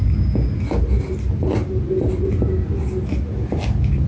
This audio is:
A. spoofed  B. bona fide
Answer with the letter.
B